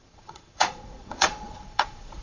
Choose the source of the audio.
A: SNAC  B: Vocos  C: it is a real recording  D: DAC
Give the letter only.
B